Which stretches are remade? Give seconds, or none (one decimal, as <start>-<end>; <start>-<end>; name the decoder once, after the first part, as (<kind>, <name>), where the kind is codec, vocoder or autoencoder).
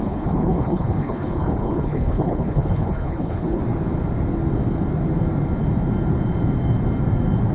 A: 0.0-3.6 (codec, HILCodec)